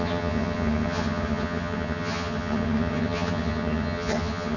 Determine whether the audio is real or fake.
fake